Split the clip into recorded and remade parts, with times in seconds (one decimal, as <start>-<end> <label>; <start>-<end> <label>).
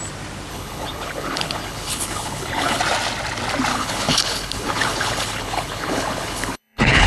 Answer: 0.0-0.5 recorded; 0.5-2.8 remade; 2.8-3.7 recorded; 3.7-7.1 remade